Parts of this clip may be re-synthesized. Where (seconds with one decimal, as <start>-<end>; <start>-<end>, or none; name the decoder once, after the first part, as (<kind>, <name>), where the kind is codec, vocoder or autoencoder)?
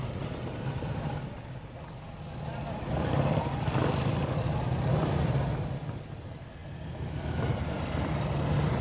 none